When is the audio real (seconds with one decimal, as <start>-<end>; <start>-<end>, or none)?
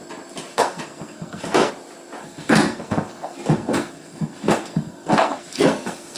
0.0-0.5; 1.7-2.2